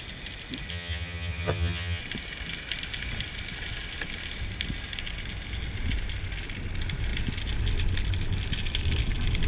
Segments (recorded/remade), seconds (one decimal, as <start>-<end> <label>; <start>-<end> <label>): 0.0-0.7 recorded; 0.7-2.0 remade; 2.0-9.5 recorded